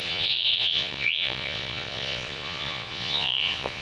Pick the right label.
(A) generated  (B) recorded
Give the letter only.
A